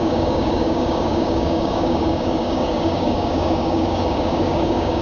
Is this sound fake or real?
fake